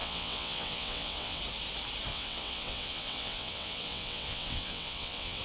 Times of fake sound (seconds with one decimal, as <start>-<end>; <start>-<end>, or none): 0.0-1.4; 2.1-5.4